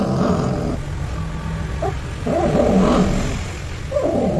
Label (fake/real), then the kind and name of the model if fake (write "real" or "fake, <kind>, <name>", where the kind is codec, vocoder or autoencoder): real